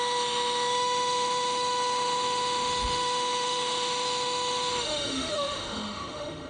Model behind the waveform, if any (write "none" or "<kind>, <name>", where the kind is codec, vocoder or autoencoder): autoencoder, DAC-VAE